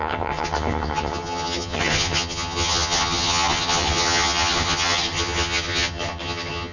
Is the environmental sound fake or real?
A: fake